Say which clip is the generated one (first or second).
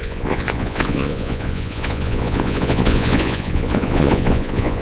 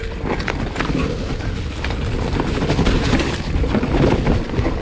first